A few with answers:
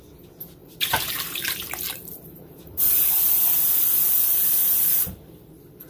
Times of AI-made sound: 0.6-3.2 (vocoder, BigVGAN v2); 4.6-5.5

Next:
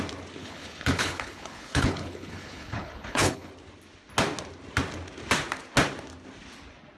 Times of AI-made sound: 0.4-3.5 (codec, HILCodec)

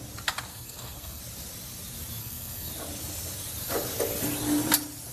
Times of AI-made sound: 0.5-1.2 (codec, SNAC); 2.2-2.7

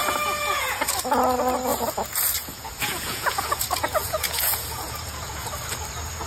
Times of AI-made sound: 0.0-0.9 (vocoder, Vocos); 1.7-5.5

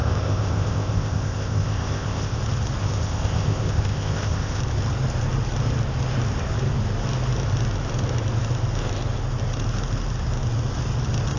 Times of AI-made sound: 0.0-2.4 (codec, ZipCodec); 2.8-4.6

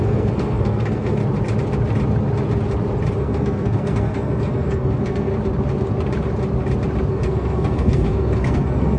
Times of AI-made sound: 0.0-1.2 (codec, SNAC); 3.2-5.3; 7.1-9.0